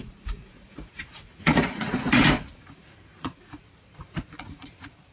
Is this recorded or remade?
remade